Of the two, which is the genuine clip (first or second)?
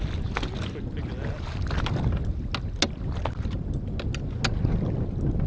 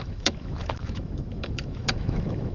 first